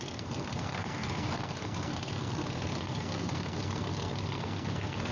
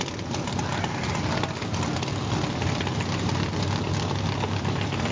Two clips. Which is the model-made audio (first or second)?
first